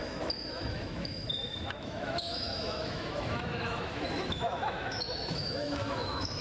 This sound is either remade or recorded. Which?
remade